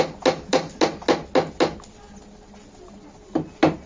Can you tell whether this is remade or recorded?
recorded